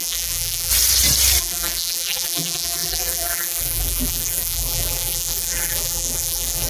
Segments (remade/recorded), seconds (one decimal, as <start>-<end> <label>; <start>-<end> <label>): 0.0-0.7 remade; 0.7-1.4 recorded; 1.4-6.7 remade